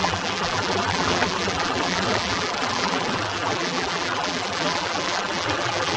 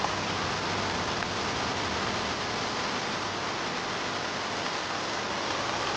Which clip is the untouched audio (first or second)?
second